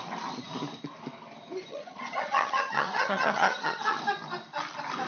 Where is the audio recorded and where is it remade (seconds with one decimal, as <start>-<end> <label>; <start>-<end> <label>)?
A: 0.0-1.7 recorded; 1.7-4.0 remade; 4.0-5.1 recorded